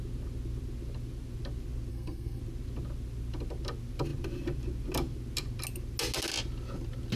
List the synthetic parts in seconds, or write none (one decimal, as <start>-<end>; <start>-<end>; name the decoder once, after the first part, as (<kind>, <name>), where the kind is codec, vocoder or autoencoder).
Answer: 1.9-2.4 (codec, SNAC)